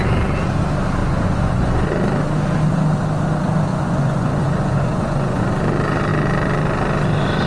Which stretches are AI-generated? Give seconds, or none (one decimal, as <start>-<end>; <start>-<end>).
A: 1.0-1.9; 3.7-5.5